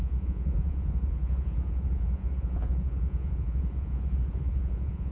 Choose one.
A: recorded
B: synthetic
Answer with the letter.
B